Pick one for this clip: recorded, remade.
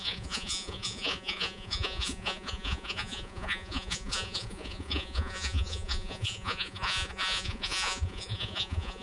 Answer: remade